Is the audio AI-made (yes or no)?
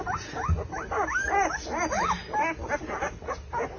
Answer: no